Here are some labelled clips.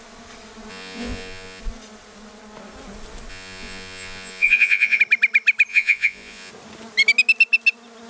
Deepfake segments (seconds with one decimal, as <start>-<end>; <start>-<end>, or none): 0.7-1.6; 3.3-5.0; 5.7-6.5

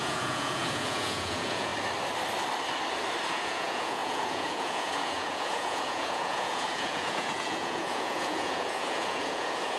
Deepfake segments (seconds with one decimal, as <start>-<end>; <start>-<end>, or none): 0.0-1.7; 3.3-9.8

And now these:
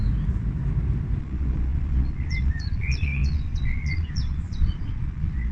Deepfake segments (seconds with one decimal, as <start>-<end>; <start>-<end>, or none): 1.2-5.5